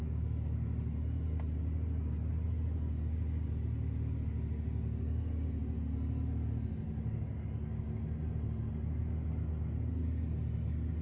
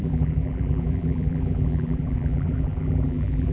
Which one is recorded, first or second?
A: first